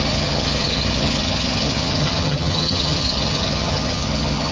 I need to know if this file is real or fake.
fake